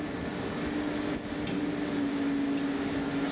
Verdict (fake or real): real